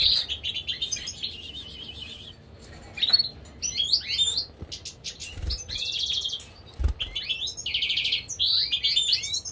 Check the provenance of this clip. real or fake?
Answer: real